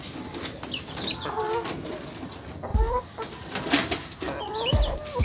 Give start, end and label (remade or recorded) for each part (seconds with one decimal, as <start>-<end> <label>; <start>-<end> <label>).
0.0-5.2 recorded